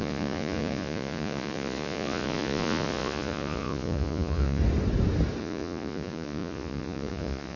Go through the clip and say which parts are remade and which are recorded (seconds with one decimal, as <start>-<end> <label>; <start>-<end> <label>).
0.0-4.6 remade; 4.6-5.4 recorded; 5.4-7.6 remade